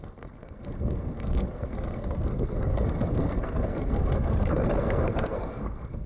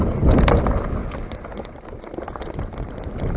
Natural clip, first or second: second